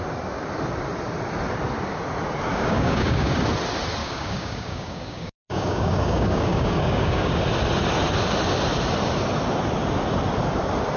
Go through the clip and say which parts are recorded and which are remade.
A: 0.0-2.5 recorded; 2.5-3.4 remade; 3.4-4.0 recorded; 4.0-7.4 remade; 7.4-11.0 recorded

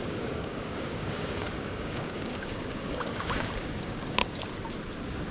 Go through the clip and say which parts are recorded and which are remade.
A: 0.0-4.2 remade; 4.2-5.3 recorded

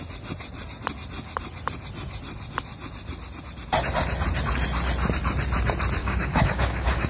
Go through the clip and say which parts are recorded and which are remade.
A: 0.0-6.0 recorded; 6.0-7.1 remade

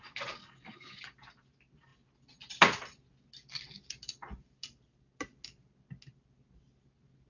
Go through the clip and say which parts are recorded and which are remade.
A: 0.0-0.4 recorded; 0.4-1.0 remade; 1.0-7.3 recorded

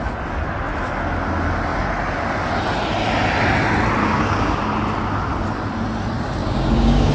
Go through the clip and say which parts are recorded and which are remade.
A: 0.0-4.0 recorded; 4.0-4.6 remade; 4.6-6.4 recorded; 6.4-7.1 remade